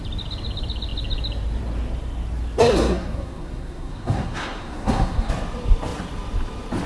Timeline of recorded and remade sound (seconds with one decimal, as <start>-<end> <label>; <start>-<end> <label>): 0.0-2.6 recorded; 2.6-5.3 remade; 5.3-6.9 recorded